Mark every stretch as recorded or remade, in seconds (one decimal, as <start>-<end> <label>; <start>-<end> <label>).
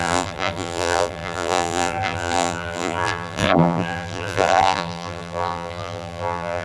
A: 0.0-6.6 remade